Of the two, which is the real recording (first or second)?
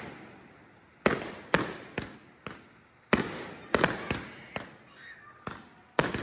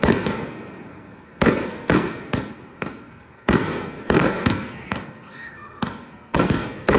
first